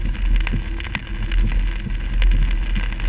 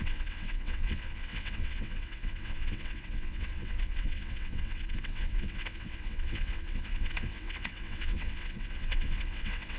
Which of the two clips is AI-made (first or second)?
second